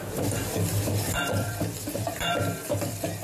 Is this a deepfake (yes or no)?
yes